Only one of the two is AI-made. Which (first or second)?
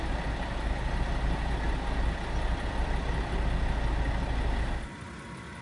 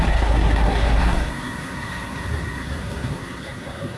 second